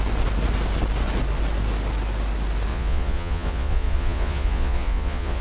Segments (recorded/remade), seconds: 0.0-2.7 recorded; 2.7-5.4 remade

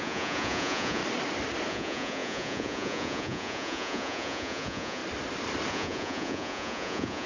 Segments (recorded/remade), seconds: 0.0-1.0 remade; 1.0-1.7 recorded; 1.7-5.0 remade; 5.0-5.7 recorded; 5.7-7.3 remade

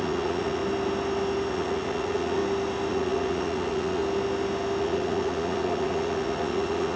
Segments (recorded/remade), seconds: 0.0-0.6 remade; 0.6-1.5 recorded; 1.5-2.4 remade; 2.4-2.9 recorded; 2.9-4.0 remade; 4.0-4.8 recorded; 4.8-7.0 remade